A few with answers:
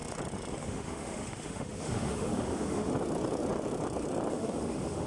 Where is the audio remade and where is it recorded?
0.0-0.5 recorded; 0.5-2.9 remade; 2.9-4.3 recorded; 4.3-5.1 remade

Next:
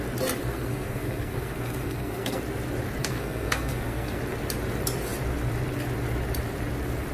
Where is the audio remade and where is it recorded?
0.0-0.4 recorded; 0.4-2.4 remade; 2.4-3.0 recorded; 3.0-4.2 remade; 4.2-7.1 recorded